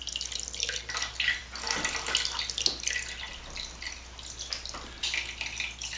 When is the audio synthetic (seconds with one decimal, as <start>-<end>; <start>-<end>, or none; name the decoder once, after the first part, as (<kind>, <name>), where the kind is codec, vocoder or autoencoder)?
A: none